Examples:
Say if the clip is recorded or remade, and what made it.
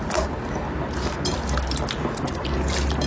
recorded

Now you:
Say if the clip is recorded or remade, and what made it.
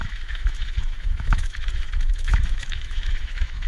remade, autoencoder, DAC-VAE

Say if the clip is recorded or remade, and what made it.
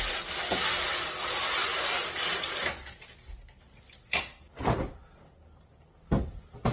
recorded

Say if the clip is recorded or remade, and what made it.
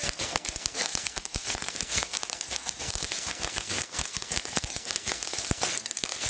remade, codec, SNAC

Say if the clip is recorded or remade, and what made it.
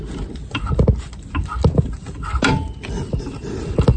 recorded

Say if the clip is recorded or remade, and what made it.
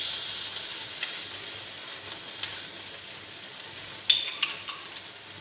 recorded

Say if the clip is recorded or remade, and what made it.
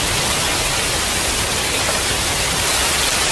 recorded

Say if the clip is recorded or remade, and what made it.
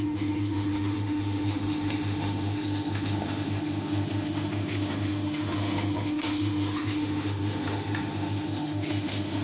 remade, autoencoder, DAC-VAE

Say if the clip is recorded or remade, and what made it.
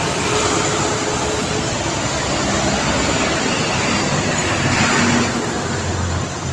recorded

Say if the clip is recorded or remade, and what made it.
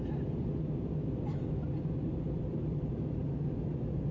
recorded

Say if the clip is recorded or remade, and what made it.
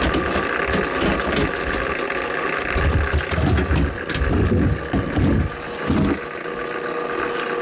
recorded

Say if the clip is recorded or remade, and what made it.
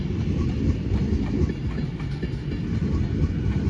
recorded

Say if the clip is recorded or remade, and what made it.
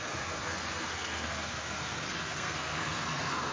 remade, codec, SNAC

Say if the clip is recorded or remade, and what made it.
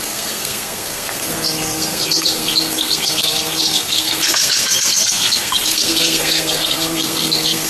remade, codec, SNAC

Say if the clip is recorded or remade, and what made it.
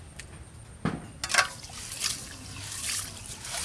recorded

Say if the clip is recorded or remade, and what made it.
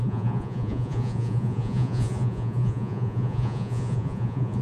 remade, vocoder, Vocos